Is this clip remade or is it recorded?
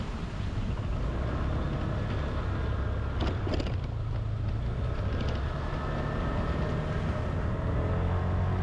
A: recorded